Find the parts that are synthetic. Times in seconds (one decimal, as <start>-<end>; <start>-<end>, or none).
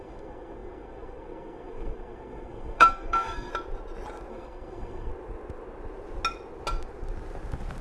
0.0-3.5; 4.3-5.1